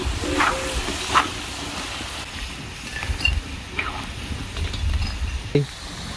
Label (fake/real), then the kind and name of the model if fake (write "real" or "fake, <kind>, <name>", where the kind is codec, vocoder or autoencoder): real